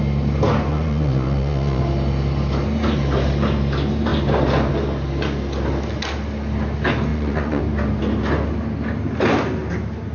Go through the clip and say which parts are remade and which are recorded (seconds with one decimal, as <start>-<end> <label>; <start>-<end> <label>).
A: 0.0-0.7 recorded; 0.7-1.8 remade; 1.8-7.1 recorded; 7.1-7.6 remade; 7.6-10.1 recorded